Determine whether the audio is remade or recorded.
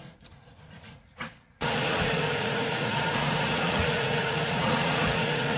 remade